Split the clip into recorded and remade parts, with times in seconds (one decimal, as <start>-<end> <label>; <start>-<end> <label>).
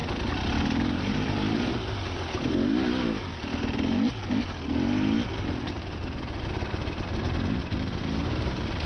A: 0.0-8.9 recorded